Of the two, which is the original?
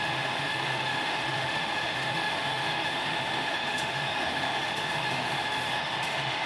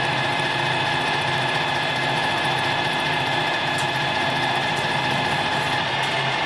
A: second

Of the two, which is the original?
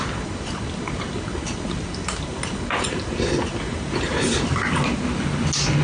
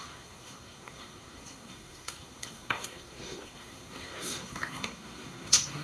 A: first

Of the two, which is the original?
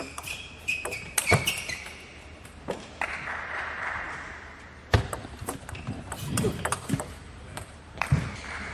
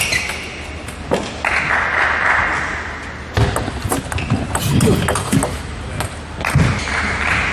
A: second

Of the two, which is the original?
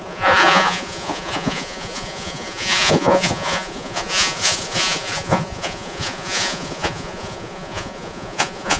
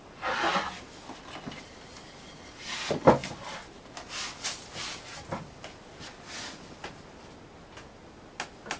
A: second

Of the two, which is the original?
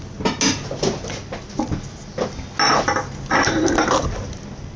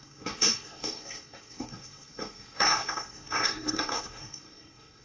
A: first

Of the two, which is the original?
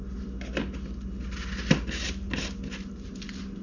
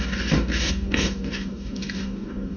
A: first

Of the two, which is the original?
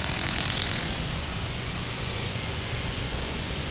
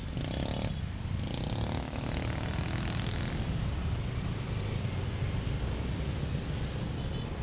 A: second